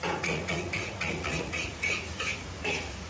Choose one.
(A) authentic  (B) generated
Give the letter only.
B